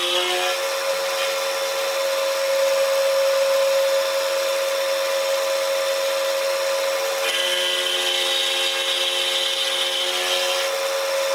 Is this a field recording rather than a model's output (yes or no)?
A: yes